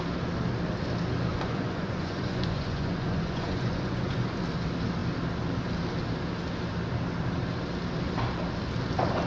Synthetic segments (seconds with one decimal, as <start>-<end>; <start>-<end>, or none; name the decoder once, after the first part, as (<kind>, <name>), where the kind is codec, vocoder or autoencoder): 1.3-4.4 (vocoder, Vocos)